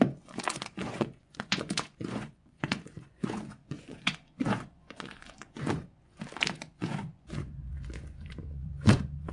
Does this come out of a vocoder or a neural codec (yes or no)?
yes